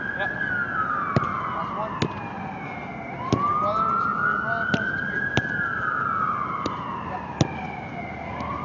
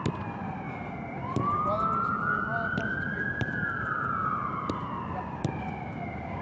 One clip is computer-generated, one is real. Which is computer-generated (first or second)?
second